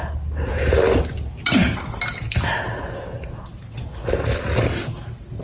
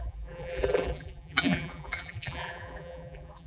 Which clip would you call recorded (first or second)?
first